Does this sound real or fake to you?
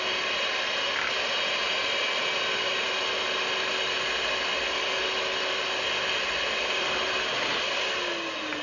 real